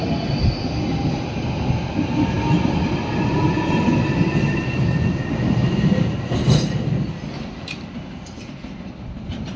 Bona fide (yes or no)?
yes